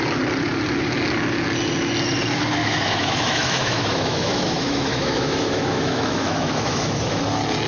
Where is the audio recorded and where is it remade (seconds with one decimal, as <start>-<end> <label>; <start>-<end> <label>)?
0.0-2.6 recorded; 2.6-7.2 remade; 7.2-7.7 recorded